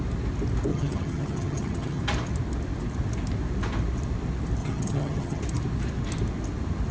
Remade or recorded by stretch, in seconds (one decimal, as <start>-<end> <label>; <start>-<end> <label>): 0.0-0.7 recorded; 0.7-2.0 remade; 2.0-4.6 recorded; 4.6-5.4 remade; 5.4-6.9 recorded